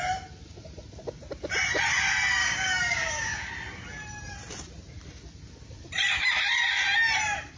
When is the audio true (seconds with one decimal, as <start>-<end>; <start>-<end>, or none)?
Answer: 0.0-2.4; 3.5-7.6